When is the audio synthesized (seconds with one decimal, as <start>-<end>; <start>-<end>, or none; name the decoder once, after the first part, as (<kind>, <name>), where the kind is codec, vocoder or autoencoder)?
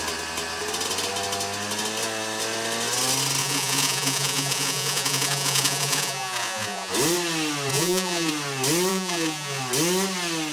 3.4-6.9 (vocoder, Vocos); 7.7-8.3; 8.9-9.6